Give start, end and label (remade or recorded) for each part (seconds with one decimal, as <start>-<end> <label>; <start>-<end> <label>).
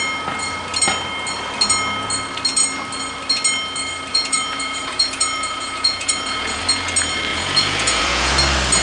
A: 0.0-4.1 recorded; 4.1-6.6 remade; 6.6-7.3 recorded; 7.3-8.3 remade; 8.3-8.8 recorded